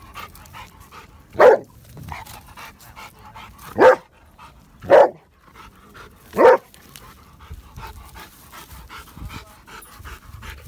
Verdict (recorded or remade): recorded